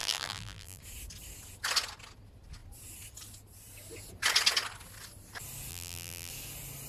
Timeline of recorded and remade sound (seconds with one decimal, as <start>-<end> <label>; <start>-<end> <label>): 0.0-0.8 remade; 0.8-5.7 recorded; 5.7-6.3 remade; 6.3-6.9 recorded